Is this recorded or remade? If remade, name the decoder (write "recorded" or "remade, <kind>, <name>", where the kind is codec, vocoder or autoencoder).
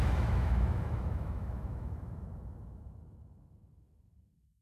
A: remade, autoencoder, DAC-VAE